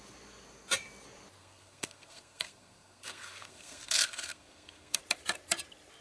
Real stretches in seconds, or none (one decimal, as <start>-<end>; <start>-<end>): 0.0-1.4; 5.0-6.0